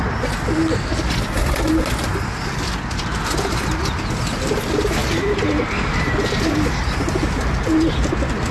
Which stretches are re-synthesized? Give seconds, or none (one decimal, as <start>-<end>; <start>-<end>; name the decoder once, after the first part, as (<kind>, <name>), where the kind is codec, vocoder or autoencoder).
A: none